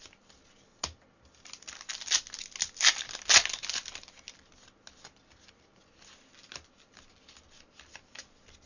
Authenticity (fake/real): real